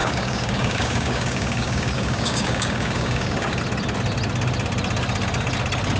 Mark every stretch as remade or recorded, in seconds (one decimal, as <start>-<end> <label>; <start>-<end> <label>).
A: 0.0-3.6 remade; 3.6-6.0 recorded

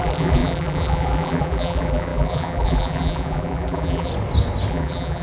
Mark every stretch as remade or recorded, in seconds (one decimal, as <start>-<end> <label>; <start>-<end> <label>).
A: 0.0-4.1 remade; 4.1-4.7 recorded; 4.7-5.2 remade

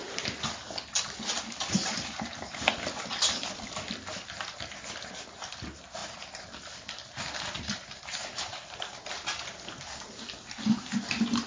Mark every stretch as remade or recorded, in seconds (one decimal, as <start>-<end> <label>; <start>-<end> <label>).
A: 0.0-11.5 recorded